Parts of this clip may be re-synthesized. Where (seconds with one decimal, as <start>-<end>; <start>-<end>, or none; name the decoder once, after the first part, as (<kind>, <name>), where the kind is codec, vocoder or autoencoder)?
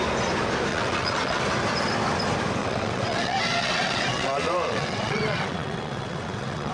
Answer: 0.7-1.4 (vocoder, WaveNeXt); 2.6-6.7